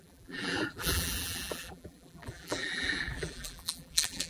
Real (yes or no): no